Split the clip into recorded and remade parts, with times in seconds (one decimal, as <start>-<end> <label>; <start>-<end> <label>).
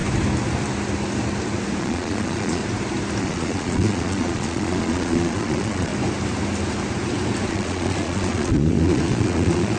0.0-1.8 recorded; 1.8-2.6 remade; 2.6-3.2 recorded; 3.2-5.9 remade; 5.9-7.5 recorded; 7.5-9.8 remade